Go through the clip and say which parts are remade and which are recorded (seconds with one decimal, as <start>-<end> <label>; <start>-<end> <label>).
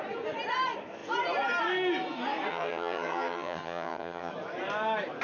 0.0-2.5 recorded; 2.5-4.3 remade; 4.3-5.2 recorded